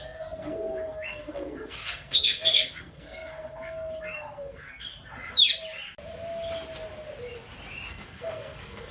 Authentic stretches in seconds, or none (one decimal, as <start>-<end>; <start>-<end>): 4.9-7.9